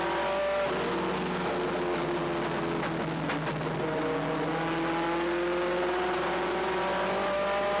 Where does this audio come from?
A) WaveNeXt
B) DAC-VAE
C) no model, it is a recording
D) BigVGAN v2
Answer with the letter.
C